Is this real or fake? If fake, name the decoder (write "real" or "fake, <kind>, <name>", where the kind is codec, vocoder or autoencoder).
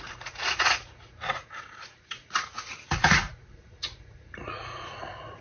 fake, vocoder, Vocos